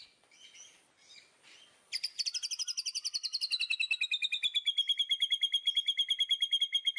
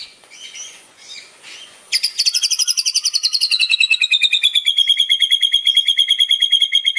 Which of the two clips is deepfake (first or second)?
second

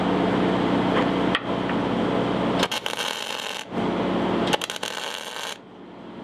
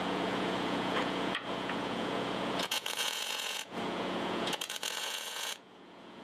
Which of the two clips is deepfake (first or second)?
second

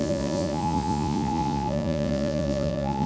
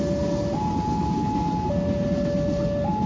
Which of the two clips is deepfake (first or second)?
first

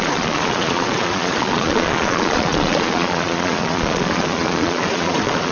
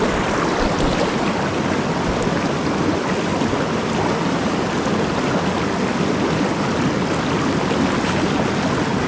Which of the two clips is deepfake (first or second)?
first